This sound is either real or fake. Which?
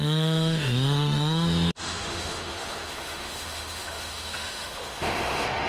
fake